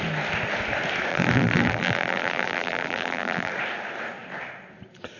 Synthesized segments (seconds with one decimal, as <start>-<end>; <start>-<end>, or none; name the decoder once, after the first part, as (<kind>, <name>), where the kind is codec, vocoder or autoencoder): 1.1-3.5 (vocoder, BigVGAN v2)